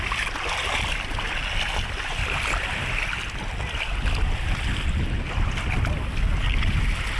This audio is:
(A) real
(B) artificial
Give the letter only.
A